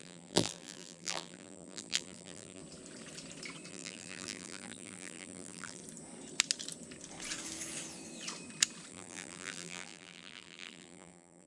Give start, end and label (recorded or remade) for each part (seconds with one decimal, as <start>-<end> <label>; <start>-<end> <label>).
0.0-2.6 remade; 2.6-3.7 recorded; 3.7-5.8 remade; 5.8-8.9 recorded; 8.9-11.5 remade

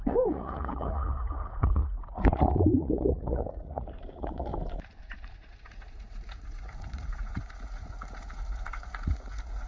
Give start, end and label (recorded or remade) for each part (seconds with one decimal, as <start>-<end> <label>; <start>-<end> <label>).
0.0-4.5 remade; 4.5-5.0 recorded; 5.0-9.7 remade

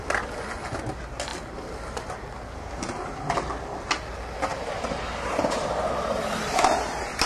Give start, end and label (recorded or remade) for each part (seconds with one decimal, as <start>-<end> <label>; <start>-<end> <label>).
0.0-4.5 recorded; 4.5-7.3 remade

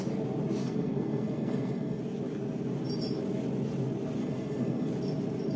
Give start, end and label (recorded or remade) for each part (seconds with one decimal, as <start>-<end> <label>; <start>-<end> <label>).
0.0-0.6 recorded; 0.6-2.0 remade; 2.0-4.2 recorded; 4.2-4.9 remade; 4.9-5.6 recorded

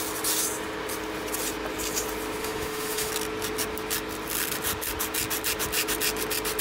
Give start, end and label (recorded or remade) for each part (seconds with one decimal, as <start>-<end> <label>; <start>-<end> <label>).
0.0-2.4 recorded; 2.4-3.1 remade; 3.1-6.6 recorded